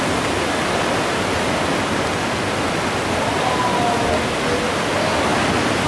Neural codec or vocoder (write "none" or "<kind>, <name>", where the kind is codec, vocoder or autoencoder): none